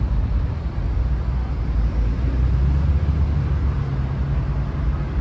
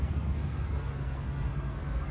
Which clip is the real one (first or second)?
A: first